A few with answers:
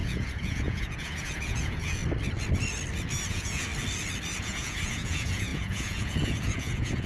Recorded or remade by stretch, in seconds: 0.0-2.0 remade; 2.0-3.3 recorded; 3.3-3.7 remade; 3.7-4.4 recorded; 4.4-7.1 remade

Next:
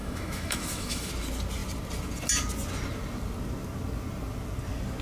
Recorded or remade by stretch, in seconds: 0.0-1.1 remade; 1.1-5.0 recorded

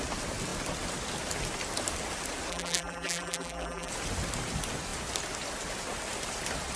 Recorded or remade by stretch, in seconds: 0.0-2.5 recorded; 2.5-3.9 remade; 3.9-6.8 recorded

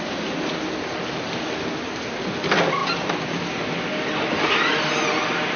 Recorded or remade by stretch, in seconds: 0.0-5.6 recorded